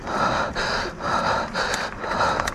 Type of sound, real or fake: real